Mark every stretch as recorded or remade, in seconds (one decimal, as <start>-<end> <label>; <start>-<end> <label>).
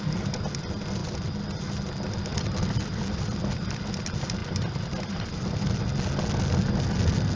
0.0-1.0 recorded; 1.0-1.7 remade; 1.7-2.3 recorded; 2.3-3.6 remade; 3.6-4.4 recorded; 4.4-5.8 remade; 5.8-7.4 recorded